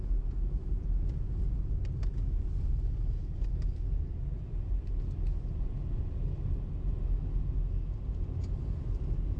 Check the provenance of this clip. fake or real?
real